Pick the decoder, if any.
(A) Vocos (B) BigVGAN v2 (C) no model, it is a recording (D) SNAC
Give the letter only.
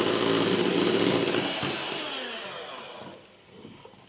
C